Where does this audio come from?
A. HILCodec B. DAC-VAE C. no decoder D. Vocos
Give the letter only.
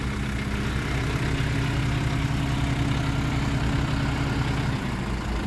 C